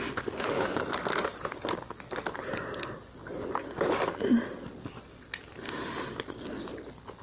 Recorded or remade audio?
recorded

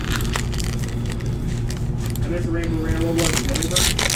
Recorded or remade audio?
recorded